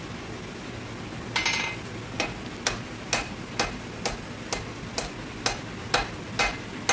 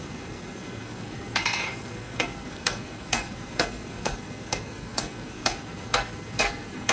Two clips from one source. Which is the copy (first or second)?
second